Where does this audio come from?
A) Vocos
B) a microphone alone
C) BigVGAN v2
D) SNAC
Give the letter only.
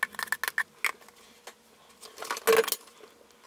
B